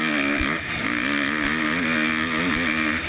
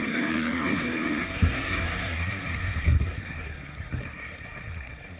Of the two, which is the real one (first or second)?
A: first